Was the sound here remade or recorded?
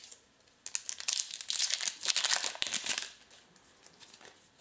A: recorded